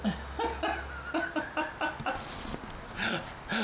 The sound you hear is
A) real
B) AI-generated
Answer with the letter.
A